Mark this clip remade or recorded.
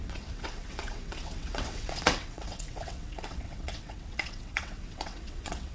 remade